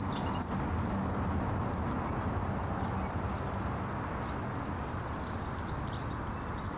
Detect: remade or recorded recorded